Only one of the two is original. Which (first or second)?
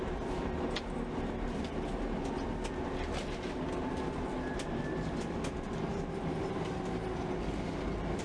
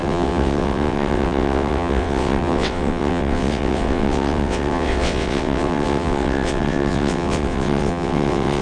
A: first